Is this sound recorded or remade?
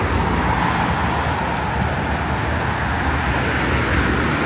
recorded